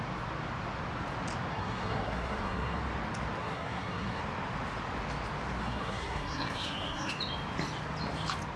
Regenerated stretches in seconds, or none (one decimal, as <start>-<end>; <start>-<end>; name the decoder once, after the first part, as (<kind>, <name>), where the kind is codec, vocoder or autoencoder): 1.5-2.8 (codec, SNAC); 3.4-4.2; 5.6-7.1